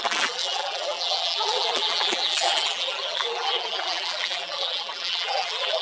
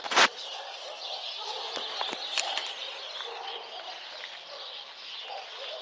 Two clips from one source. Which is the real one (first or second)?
second